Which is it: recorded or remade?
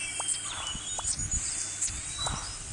recorded